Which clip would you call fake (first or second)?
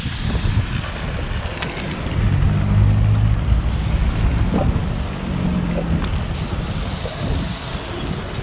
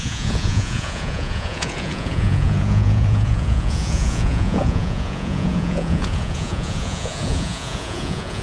second